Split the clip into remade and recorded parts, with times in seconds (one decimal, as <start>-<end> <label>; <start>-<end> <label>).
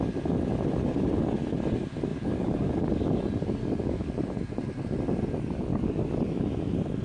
0.0-2.1 recorded; 2.1-3.2 remade; 3.2-3.6 recorded; 3.6-4.1 remade; 4.1-5.7 recorded; 5.7-6.4 remade; 6.4-7.0 recorded